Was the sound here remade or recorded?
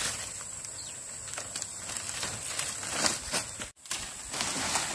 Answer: recorded